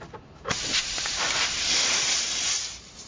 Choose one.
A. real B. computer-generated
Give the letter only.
A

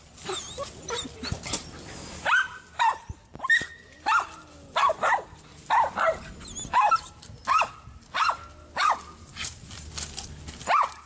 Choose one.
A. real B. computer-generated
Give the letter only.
A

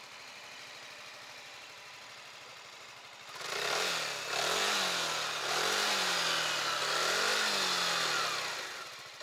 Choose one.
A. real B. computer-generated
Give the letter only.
A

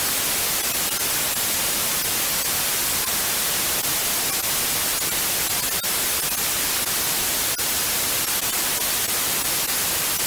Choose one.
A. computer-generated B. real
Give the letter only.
B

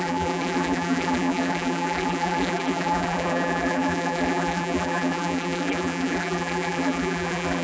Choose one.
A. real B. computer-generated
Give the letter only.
B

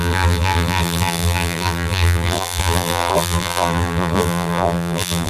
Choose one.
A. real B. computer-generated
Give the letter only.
B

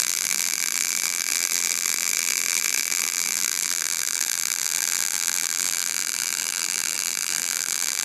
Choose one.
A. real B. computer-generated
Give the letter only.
B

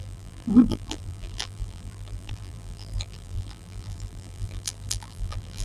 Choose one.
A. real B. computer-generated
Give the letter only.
B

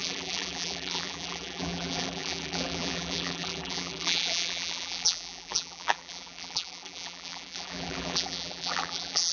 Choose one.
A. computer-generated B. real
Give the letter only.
A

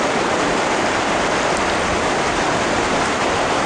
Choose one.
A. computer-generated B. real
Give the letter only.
B